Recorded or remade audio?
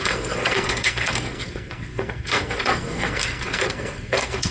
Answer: remade